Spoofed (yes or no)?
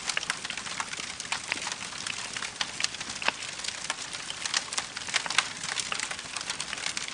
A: no